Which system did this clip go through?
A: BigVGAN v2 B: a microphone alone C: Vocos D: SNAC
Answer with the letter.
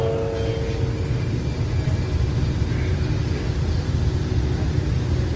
B